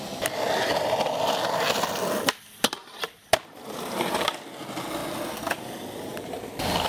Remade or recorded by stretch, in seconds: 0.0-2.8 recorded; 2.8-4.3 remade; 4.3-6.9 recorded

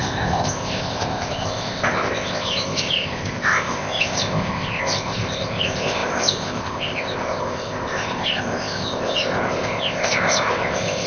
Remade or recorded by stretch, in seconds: 0.0-11.1 remade

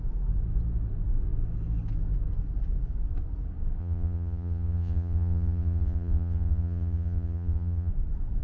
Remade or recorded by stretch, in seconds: 0.0-3.8 recorded; 3.8-7.9 remade; 7.9-8.4 recorded

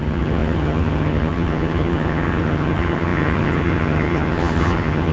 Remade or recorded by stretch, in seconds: 0.0-5.1 remade

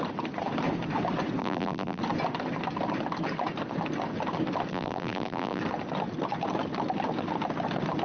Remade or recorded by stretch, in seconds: 0.0-1.4 recorded; 1.4-2.0 remade; 2.0-4.7 recorded; 4.7-5.6 remade; 5.6-8.0 recorded

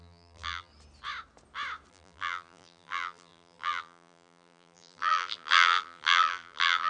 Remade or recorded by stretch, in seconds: 0.0-0.7 remade; 0.7-1.9 recorded; 1.9-6.9 remade